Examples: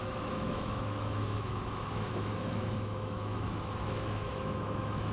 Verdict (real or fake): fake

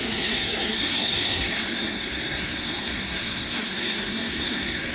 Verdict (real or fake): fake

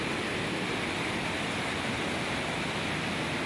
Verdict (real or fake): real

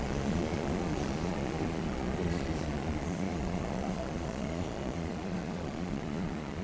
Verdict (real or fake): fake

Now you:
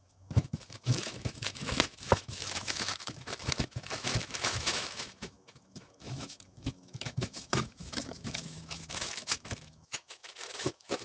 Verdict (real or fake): fake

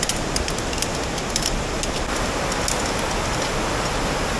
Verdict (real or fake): real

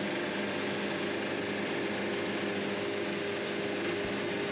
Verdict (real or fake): real